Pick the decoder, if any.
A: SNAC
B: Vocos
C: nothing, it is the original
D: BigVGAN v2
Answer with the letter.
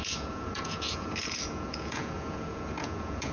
B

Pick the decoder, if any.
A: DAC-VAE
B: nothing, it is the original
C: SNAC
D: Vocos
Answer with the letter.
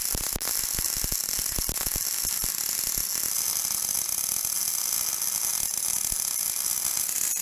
B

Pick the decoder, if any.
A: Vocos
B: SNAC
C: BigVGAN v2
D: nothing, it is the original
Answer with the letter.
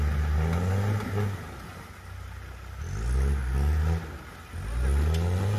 D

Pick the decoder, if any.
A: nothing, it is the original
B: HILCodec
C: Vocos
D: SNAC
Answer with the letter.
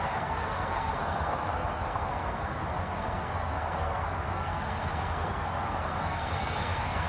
D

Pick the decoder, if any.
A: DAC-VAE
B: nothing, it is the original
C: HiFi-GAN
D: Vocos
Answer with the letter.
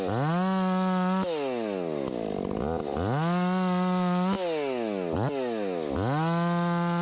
B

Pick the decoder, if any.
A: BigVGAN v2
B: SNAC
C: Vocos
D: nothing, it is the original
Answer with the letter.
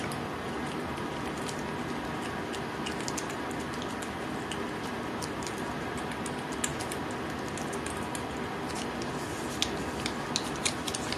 D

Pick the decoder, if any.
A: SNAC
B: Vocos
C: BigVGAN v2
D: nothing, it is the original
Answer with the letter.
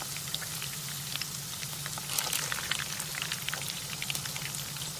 D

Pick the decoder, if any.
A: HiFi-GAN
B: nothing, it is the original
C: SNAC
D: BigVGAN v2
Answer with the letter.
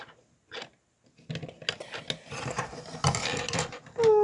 B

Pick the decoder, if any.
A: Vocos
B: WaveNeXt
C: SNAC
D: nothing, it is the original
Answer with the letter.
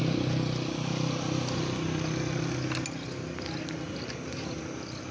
D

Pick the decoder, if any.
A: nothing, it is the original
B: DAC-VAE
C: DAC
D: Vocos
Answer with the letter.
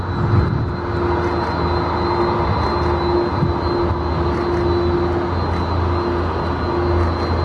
A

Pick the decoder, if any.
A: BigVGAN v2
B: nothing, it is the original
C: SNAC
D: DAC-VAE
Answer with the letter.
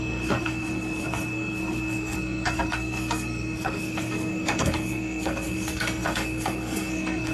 C